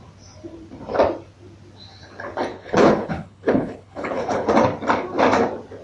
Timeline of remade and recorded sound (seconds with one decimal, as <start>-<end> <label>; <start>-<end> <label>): 0.0-2.5 recorded; 2.5-4.5 remade; 4.5-5.8 recorded